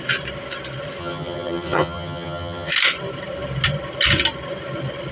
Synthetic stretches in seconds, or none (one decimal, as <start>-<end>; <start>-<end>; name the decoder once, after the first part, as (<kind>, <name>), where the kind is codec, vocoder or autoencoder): 1.0-2.7 (vocoder, HiFi-GAN)